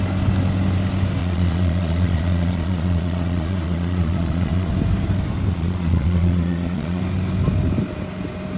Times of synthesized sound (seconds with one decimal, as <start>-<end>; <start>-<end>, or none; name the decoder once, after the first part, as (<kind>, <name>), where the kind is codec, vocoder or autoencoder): 1.2-4.7 (vocoder, Vocos); 5.5-7.0